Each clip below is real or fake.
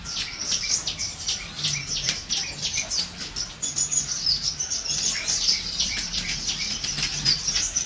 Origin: fake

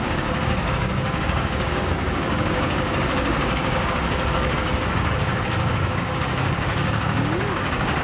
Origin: fake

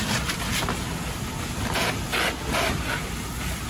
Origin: real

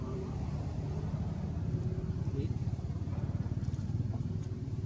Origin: fake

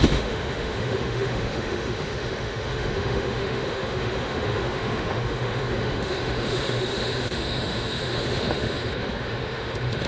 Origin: fake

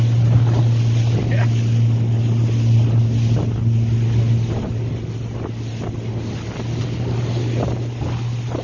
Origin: real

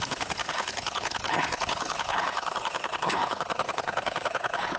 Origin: fake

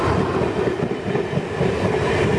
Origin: real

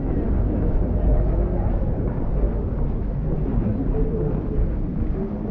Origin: real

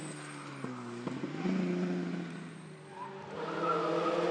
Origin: real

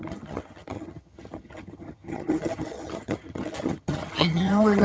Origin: fake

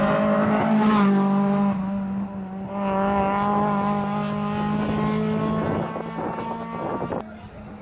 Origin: real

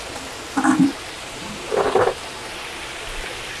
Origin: real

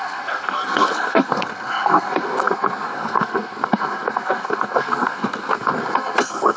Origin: fake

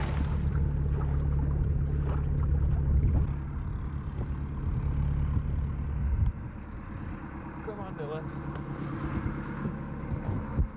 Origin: real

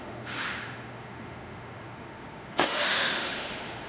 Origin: fake